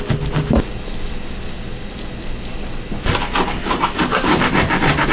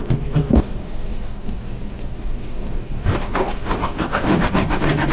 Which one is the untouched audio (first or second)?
first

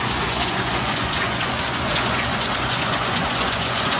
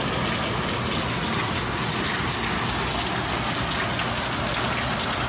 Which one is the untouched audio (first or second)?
second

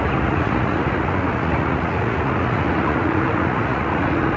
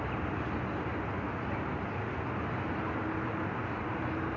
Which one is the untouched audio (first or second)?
second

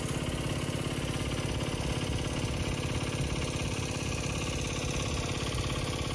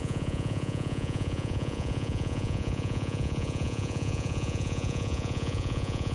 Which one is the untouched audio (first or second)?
first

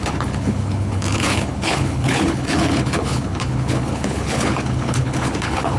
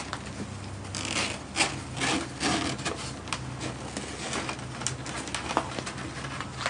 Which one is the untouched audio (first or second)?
second